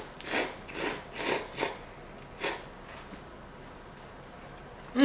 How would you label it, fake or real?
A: real